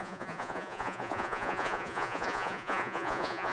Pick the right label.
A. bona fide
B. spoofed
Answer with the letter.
B